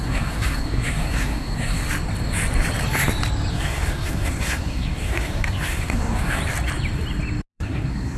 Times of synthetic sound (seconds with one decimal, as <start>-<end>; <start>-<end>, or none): 0.0-1.8; 3.5-6.4; 7.5-8.2